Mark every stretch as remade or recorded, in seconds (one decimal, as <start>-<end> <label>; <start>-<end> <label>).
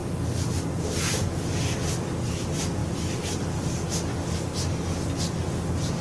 0.0-6.0 recorded